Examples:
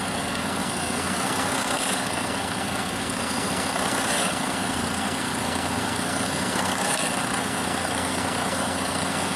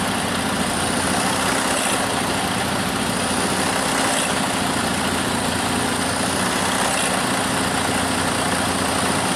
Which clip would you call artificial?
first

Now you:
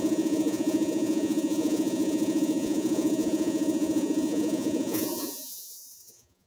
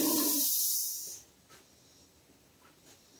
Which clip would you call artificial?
first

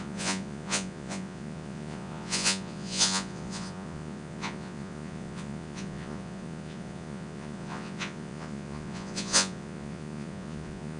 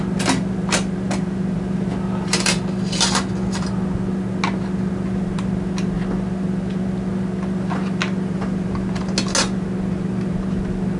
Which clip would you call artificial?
first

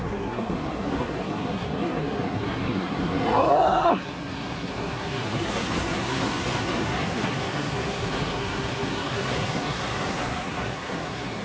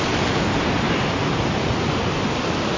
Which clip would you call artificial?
first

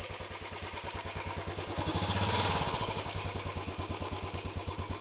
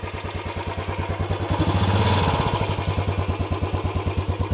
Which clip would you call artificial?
first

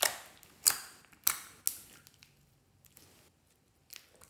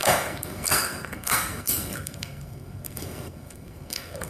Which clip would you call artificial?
second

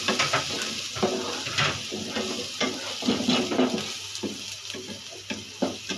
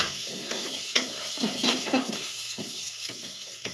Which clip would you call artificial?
second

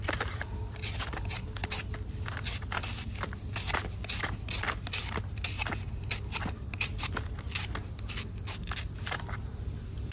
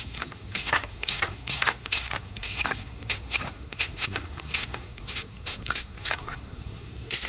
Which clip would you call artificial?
second